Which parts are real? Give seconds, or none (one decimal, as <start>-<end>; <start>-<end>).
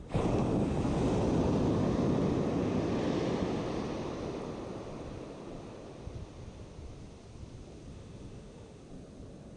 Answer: 0.0-7.9; 8.8-9.6